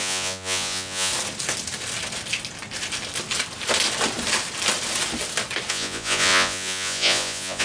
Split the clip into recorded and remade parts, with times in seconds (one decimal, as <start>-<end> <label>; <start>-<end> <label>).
0.0-1.1 remade; 1.1-5.7 recorded; 5.7-7.6 remade